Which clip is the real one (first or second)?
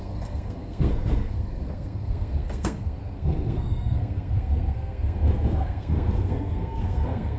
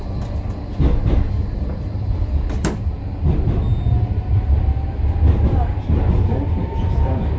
second